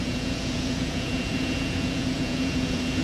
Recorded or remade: remade